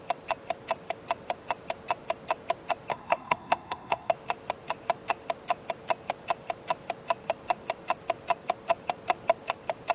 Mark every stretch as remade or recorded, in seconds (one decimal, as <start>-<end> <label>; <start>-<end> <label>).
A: 0.0-2.9 recorded; 2.9-4.1 remade; 4.1-9.9 recorded